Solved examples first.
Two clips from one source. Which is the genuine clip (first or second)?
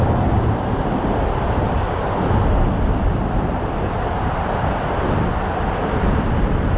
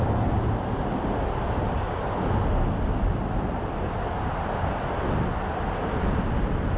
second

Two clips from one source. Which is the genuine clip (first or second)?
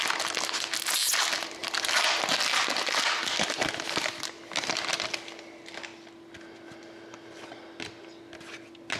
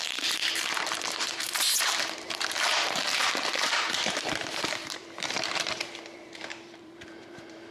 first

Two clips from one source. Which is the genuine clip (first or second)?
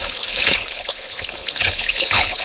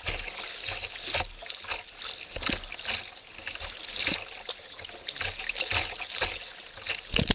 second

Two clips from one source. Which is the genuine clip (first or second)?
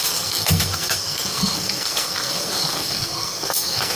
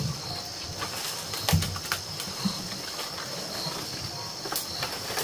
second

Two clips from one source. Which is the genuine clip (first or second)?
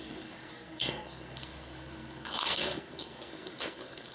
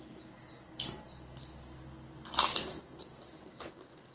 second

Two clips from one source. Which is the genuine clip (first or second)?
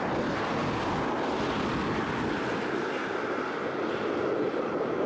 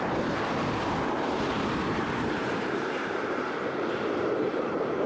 first